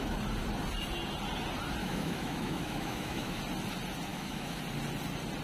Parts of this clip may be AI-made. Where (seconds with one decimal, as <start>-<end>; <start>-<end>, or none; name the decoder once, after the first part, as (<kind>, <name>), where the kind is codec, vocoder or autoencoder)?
1.8-3.4 (autoencoder, DAC-VAE); 4.1-4.6